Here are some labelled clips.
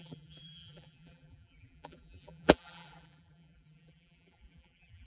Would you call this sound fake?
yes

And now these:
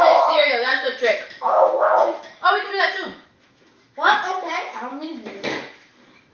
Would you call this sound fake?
yes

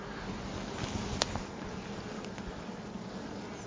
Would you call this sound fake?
no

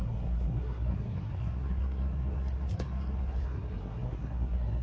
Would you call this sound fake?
yes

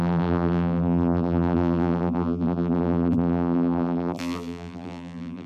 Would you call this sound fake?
yes